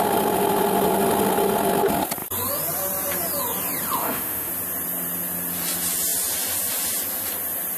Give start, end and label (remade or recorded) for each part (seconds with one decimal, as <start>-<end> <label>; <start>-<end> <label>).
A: 0.0-4.0 recorded; 4.0-4.5 remade; 4.5-7.8 recorded